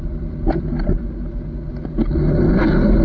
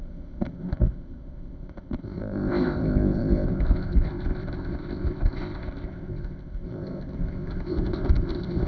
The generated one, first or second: second